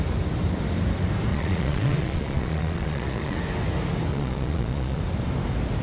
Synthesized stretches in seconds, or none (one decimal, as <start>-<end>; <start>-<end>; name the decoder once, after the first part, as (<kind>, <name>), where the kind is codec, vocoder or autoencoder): 1.3-3.4 (vocoder, Vocos); 4.1-5.0